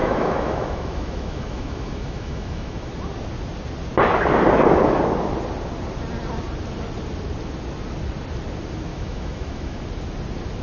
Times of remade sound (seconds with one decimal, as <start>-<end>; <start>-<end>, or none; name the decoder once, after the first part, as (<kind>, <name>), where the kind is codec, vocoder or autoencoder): 0.0-2.9 (autoencoder, DAC-VAE); 8.9-9.8